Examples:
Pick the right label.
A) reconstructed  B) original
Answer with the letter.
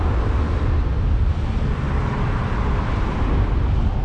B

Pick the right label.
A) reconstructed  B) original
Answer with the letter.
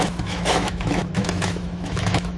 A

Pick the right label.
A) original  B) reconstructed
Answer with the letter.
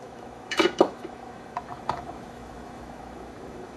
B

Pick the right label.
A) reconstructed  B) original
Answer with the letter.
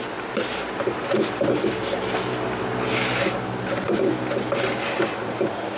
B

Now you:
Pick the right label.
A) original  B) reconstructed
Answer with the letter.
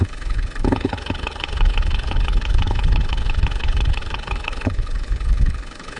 B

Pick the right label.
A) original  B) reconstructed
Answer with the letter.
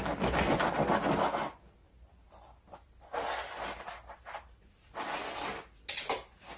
A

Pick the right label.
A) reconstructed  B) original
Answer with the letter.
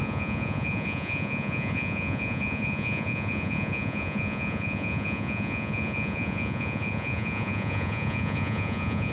A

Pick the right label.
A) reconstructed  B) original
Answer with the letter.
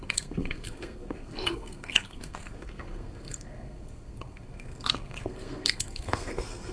A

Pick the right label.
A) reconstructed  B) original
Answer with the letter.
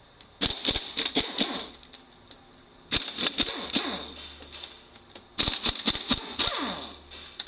B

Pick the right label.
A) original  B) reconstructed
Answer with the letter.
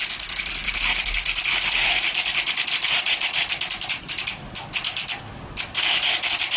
B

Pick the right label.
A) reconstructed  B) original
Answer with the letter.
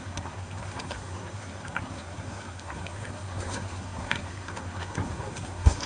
A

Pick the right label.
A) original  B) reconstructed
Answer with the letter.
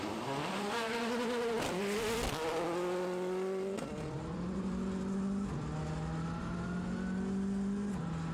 A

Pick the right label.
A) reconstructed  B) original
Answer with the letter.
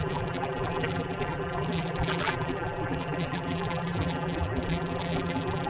A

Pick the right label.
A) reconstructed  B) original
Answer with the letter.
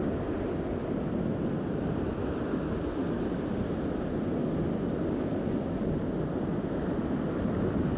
B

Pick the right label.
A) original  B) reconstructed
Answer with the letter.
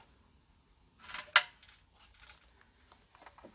A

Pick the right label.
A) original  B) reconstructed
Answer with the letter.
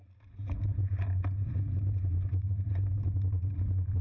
A